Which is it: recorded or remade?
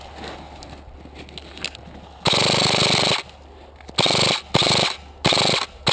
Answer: recorded